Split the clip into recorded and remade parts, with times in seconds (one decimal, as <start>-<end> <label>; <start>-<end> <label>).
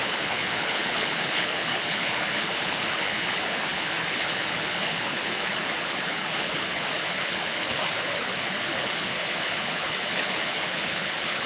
0.0-11.5 remade